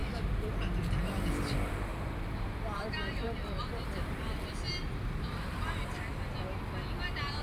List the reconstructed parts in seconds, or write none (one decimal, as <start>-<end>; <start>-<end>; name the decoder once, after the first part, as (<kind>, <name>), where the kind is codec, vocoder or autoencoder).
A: 0.0-0.5 (vocoder, BigVGAN v2); 1.9-6.3

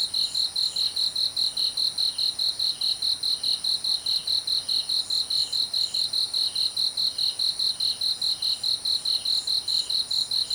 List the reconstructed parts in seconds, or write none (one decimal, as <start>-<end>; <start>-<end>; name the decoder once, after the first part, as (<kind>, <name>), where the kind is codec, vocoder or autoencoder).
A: 5.4-6.1 (vocoder, BigVGAN v2); 9.7-10.5

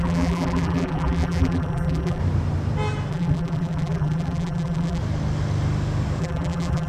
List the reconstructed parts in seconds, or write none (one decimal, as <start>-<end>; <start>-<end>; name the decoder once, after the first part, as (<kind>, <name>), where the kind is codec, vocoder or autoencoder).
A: 0.0-2.2 (vocoder, BigVGAN v2); 3.1-5.0; 6.2-6.9

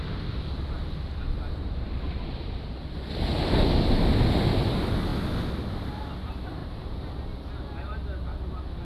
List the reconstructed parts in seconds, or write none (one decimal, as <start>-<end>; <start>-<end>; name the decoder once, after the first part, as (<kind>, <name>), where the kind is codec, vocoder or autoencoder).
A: 1.6-2.5 (vocoder, BigVGAN v2); 6.6-7.2

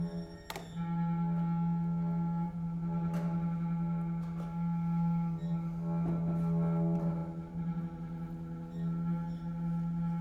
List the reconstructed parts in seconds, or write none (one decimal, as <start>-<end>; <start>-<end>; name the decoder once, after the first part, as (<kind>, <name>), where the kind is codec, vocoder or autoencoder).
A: none

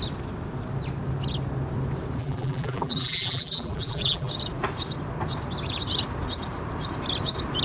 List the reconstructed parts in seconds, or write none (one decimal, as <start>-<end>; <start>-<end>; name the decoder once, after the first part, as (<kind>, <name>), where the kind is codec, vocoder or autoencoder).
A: 2.2-4.3 (vocoder, BigVGAN v2)

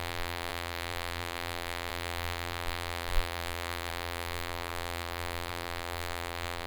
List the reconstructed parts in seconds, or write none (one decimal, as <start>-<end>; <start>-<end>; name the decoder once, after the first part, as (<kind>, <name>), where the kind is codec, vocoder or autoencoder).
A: 0.0-6.7 (vocoder, BigVGAN v2)